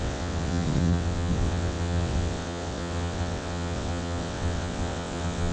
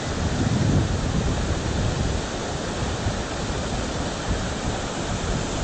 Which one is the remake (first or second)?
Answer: first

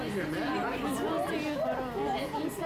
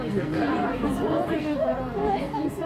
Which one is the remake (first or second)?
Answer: second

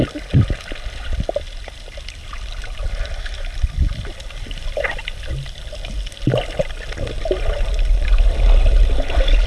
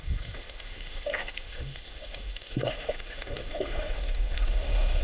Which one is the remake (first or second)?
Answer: second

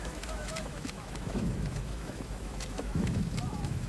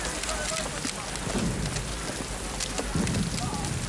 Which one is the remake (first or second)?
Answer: first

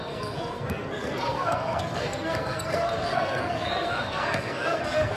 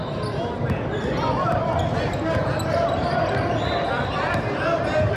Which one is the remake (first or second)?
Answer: first